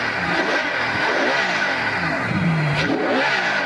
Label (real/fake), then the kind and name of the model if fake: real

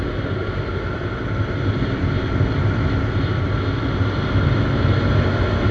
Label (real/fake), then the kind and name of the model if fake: real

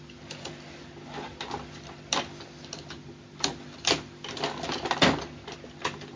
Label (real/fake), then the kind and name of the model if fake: fake, vocoder, BigVGAN v2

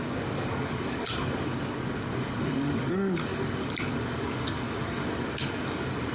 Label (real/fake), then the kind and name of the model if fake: fake, codec, DAC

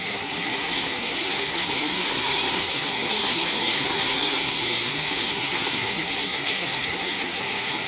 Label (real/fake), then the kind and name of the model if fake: fake, codec, SNAC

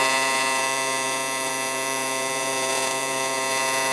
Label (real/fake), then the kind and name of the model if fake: fake, vocoder, Vocos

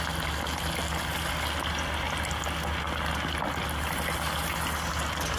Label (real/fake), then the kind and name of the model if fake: real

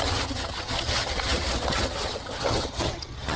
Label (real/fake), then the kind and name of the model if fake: fake, vocoder, HiFi-GAN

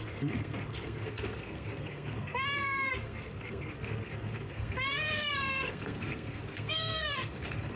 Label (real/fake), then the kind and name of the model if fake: fake, codec, SNAC